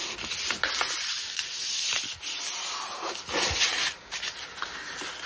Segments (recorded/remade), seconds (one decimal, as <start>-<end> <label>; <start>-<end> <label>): 0.0-5.3 recorded